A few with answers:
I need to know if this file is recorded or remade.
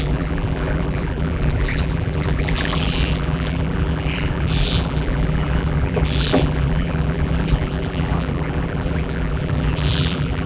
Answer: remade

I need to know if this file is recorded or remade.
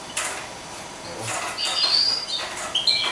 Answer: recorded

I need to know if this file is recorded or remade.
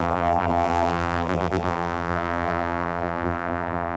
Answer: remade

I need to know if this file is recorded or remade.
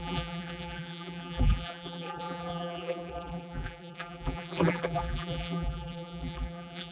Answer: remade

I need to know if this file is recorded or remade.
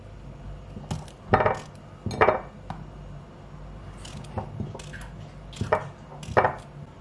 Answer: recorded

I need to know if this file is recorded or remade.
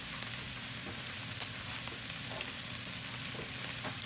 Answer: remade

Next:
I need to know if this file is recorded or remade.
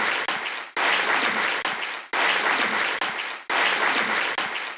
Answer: recorded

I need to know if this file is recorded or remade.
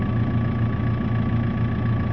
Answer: recorded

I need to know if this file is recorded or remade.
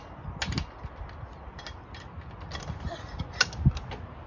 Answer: recorded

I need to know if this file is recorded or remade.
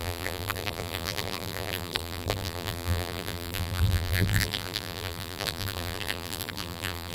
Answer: remade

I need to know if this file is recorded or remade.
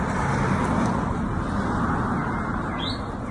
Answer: recorded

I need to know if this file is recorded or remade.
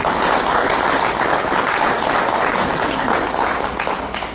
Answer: recorded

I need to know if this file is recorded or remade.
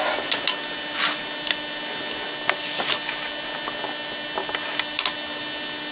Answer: recorded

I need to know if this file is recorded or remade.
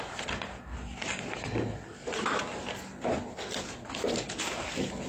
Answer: recorded